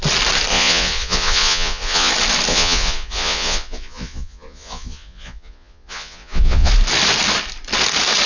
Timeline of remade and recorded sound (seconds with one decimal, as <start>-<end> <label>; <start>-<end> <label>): 0.0-0.5 recorded; 0.5-2.1 remade; 2.1-2.5 recorded; 2.5-6.7 remade; 6.7-8.3 recorded